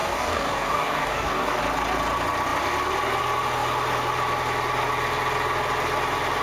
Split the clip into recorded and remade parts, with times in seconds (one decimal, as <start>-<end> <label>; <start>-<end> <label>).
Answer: 0.0-1.6 remade; 1.6-6.4 recorded